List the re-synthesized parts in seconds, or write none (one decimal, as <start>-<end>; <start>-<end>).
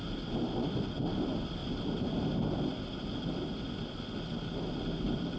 none